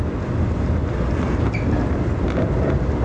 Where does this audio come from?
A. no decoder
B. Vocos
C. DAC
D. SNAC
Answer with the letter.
A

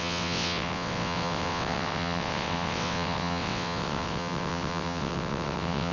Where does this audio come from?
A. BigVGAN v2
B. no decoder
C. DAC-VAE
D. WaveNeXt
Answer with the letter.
D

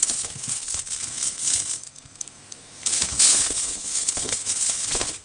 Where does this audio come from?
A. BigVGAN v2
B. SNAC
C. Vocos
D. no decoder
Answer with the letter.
B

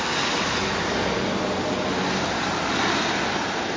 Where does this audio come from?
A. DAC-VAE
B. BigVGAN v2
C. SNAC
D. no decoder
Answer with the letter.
D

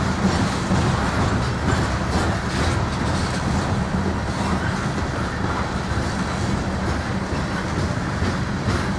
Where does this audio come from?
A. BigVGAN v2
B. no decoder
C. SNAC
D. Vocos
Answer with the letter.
B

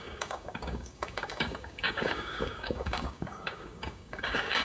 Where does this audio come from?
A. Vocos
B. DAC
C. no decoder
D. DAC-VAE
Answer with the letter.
B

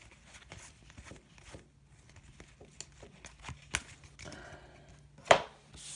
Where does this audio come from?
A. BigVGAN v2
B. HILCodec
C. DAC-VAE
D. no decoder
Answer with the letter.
D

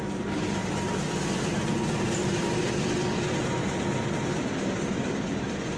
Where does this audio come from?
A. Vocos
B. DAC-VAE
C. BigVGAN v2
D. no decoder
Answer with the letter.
D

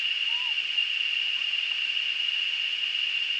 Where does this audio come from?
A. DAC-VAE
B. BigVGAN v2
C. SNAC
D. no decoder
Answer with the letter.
B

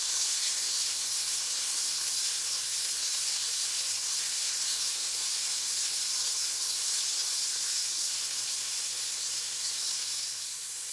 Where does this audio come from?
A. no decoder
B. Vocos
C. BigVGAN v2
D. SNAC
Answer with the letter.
D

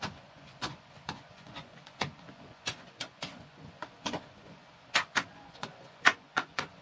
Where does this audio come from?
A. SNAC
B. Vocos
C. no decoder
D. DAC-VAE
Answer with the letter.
B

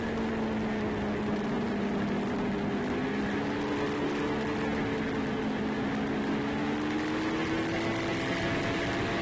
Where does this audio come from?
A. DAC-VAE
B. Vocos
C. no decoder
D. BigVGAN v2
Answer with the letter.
C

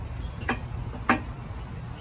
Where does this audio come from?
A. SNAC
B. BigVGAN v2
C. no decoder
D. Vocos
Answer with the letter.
C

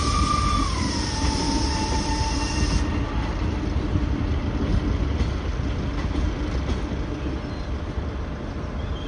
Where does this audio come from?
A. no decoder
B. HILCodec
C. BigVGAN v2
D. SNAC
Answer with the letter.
A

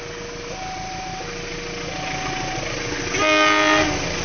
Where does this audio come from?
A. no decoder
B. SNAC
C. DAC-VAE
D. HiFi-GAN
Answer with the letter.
A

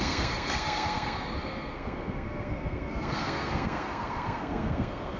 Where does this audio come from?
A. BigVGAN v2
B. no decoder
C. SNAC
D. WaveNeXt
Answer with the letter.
C